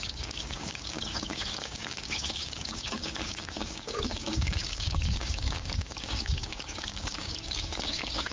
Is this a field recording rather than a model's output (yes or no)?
no